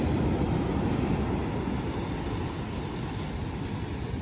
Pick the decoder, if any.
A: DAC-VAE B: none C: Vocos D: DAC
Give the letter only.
B